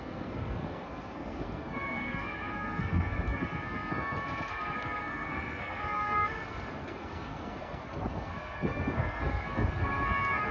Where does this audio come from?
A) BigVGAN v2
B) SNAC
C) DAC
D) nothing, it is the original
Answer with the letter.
B